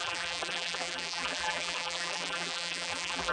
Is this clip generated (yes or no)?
yes